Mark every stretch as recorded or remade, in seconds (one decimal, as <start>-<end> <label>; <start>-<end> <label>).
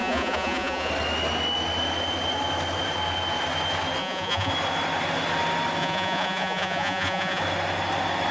0.0-0.9 remade; 0.9-4.0 recorded; 4.0-4.5 remade; 4.5-5.8 recorded; 5.8-7.4 remade; 7.4-8.3 recorded